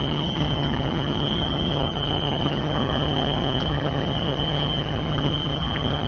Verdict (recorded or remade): remade